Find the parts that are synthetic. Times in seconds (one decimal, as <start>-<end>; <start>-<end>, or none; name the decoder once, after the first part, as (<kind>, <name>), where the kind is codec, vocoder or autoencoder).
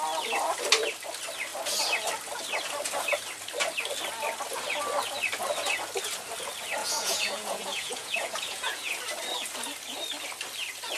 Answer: 6.8-9.0 (vocoder, Vocos)